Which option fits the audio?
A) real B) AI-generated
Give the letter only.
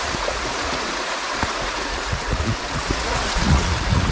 B